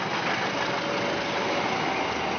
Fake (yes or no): no